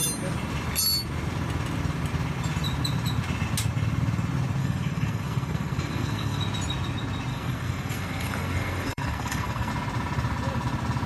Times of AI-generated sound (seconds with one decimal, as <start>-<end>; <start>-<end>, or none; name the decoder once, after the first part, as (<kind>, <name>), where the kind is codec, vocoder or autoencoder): 4.6-6.4 (codec, SNAC); 7.3-9.7